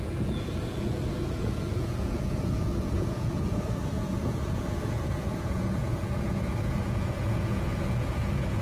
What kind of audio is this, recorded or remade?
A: remade